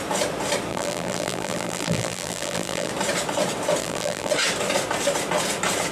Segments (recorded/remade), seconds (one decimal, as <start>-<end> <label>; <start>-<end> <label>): 0.0-0.7 recorded; 0.7-2.9 remade; 2.9-3.8 recorded; 3.8-4.3 remade; 4.3-5.9 recorded